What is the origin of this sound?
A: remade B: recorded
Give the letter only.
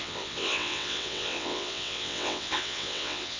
A